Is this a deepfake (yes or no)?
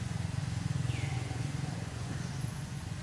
yes